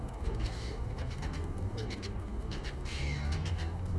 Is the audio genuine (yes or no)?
no